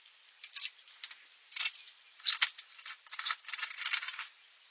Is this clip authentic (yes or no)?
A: yes